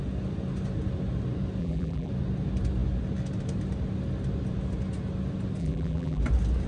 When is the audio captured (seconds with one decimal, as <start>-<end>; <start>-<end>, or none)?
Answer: 0.0-1.6; 2.1-5.6; 6.2-6.7